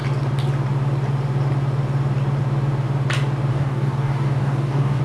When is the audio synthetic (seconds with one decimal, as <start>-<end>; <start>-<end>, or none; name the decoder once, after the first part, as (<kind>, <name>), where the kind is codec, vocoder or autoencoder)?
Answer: 3.5-5.0 (codec, DAC)